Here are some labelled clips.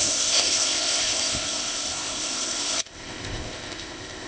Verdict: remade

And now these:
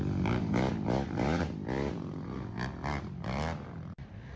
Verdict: recorded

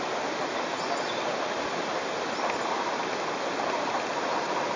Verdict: recorded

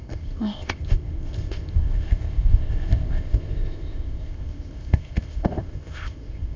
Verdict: remade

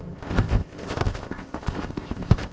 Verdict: remade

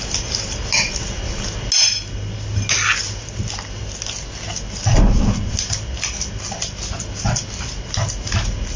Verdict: recorded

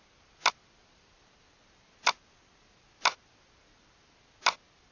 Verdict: recorded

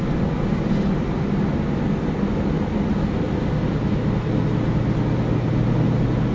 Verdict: recorded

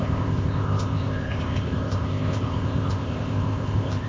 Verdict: remade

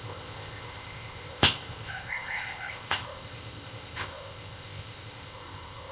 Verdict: remade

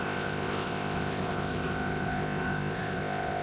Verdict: remade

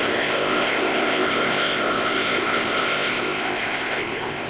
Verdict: remade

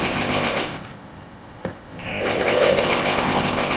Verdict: remade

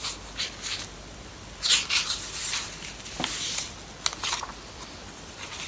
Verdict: recorded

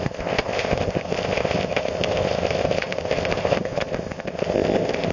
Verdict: remade